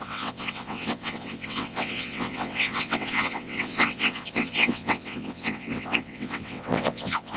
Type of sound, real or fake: fake